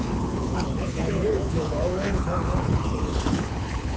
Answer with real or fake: fake